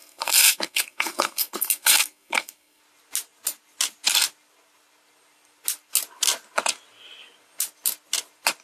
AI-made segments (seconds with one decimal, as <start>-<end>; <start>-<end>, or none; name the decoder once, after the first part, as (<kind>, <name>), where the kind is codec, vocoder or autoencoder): 0.0-2.8 (codec, SNAC)